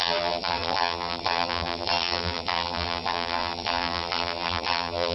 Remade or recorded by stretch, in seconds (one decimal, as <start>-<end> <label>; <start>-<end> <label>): 0.0-5.1 remade